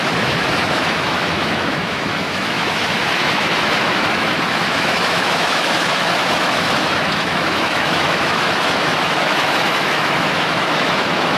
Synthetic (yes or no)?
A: yes